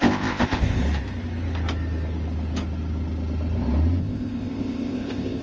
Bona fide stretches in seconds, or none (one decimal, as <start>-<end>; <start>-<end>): 0.8-4.0